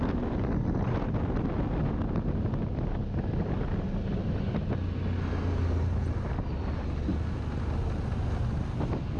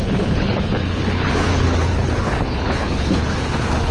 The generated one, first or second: second